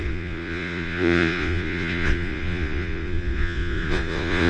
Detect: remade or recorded remade